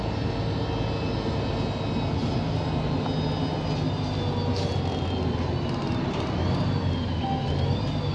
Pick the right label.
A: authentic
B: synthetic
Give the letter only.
A